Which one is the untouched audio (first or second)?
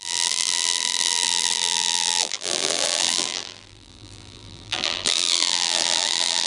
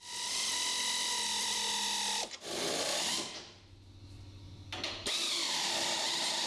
second